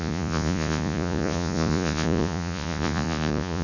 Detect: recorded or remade remade